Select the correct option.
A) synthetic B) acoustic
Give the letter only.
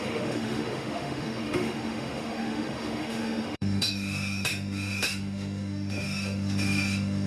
A